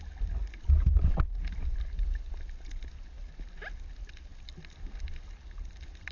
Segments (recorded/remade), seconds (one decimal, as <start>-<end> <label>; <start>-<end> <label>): 0.0-6.1 recorded